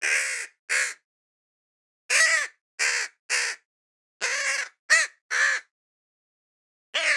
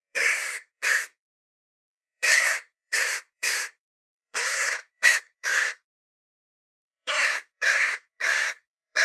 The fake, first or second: second